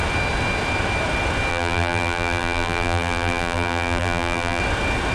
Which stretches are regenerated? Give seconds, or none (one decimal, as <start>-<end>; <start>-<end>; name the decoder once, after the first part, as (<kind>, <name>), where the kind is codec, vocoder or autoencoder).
1.5-4.6 (vocoder, BigVGAN v2)

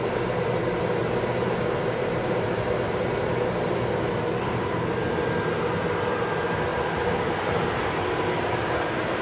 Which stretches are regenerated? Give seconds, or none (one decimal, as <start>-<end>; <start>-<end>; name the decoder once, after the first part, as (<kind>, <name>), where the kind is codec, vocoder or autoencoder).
1.0-3.0 (vocoder, BigVGAN v2); 6.7-9.2

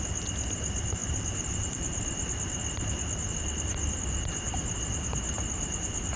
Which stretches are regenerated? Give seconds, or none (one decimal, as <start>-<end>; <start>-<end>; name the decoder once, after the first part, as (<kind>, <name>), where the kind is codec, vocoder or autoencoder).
1.0-2.0 (vocoder, BigVGAN v2)

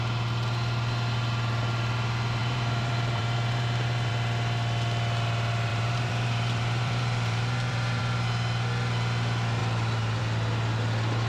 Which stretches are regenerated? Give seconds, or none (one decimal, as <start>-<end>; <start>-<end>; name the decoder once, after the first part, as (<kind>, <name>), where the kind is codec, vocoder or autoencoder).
2.4-4.1 (vocoder, BigVGAN v2); 5.7-8.0

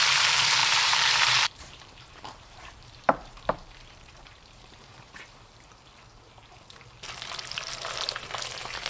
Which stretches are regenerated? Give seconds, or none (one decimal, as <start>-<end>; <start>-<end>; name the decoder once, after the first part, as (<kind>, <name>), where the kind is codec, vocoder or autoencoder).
0.6-5.2 (vocoder, BigVGAN v2)